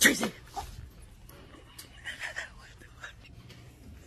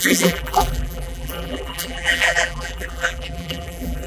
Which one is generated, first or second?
second